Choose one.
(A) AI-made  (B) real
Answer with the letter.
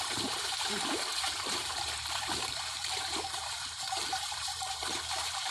A